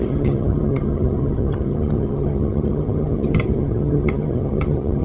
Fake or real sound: fake